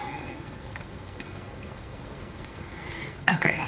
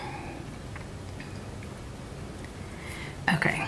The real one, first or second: second